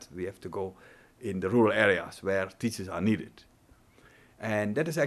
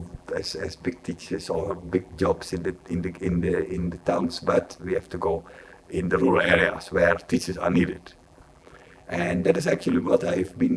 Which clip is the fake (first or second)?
second